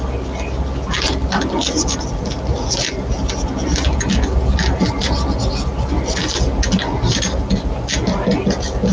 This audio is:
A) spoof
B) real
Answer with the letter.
B